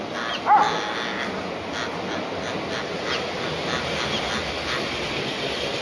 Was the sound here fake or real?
real